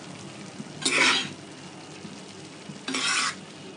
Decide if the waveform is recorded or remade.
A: recorded